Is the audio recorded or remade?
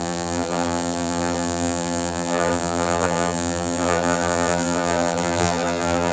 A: remade